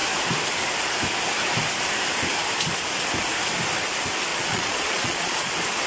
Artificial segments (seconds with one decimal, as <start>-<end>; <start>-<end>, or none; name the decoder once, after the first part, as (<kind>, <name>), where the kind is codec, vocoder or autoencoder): 4.3-5.5 (vocoder, Vocos)